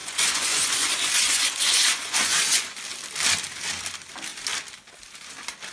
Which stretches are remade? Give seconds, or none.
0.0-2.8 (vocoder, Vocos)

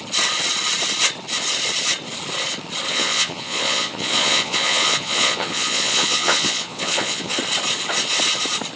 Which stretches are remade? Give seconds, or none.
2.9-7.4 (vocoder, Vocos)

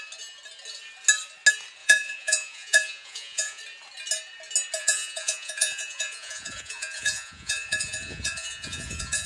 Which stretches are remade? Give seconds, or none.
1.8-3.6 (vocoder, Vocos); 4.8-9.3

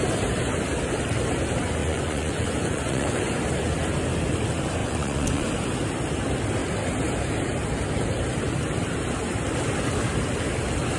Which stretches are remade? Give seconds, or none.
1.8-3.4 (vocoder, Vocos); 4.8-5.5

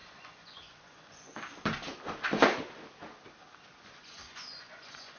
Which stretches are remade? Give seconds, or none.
0.0-1.3 (vocoder, Vocos); 3.8-5.2

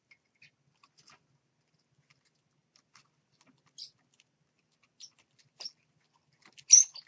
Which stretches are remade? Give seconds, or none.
none